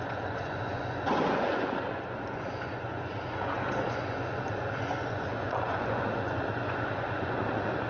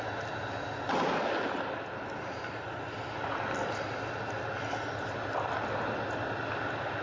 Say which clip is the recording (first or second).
second